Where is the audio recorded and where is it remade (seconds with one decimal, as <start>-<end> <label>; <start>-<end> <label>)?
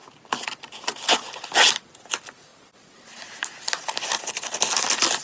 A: 0.0-5.2 recorded